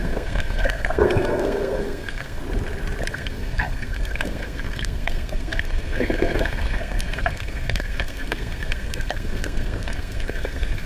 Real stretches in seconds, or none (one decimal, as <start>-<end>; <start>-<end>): 2.4-3.1